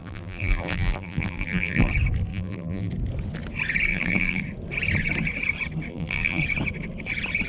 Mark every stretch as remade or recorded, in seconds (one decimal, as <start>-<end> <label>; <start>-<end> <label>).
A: 0.0-1.9 remade; 1.9-2.3 recorded; 2.3-2.9 remade; 2.9-3.9 recorded; 3.9-4.4 remade; 4.4-5.9 recorded; 5.9-6.4 remade; 6.4-7.5 recorded